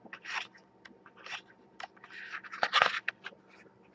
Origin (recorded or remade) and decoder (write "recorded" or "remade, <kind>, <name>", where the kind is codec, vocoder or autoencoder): recorded